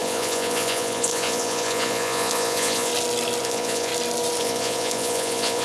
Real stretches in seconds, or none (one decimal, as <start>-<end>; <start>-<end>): 2.9-3.4; 3.9-4.4